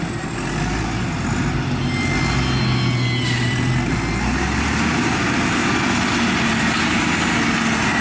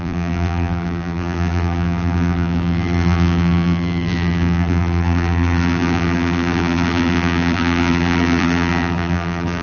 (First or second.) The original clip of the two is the first